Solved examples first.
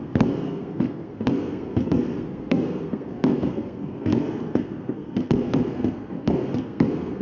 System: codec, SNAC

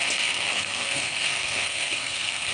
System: codec, SNAC